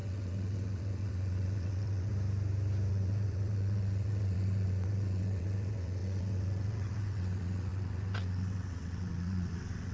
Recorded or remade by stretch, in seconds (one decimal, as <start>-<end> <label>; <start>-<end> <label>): 0.0-2.1 remade; 2.1-2.9 recorded; 2.9-9.9 remade